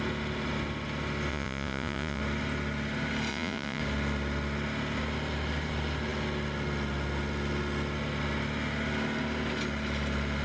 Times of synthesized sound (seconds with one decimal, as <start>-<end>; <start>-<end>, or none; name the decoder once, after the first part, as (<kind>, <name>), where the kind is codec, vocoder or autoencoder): 1.3-2.2 (vocoder, Vocos); 3.3-3.8